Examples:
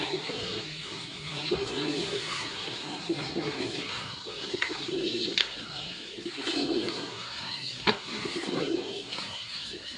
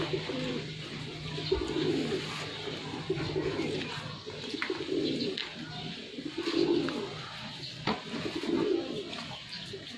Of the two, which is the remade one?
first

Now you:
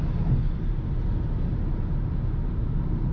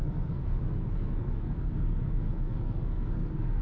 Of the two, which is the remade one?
second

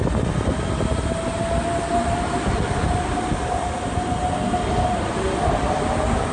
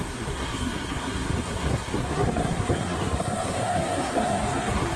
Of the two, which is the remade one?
second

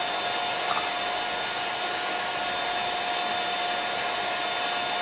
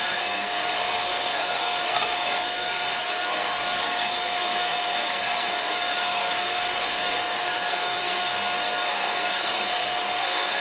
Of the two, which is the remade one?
second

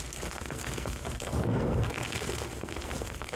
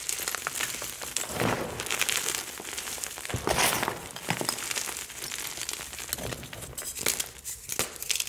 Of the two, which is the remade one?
first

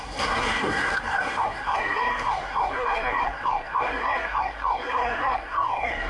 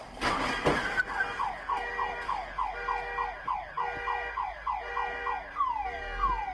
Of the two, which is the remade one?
first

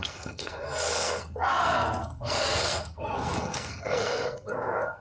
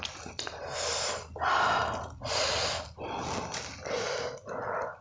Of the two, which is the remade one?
first